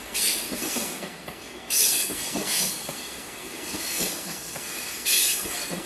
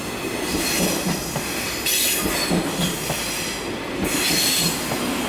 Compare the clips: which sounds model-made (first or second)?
first